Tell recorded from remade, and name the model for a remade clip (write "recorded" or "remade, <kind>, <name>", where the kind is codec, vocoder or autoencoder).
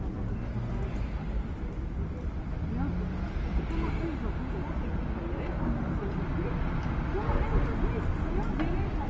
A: recorded